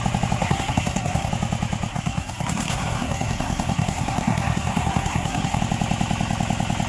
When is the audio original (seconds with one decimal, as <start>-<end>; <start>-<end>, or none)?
0.0-0.4; 1.3-1.9; 5.6-6.9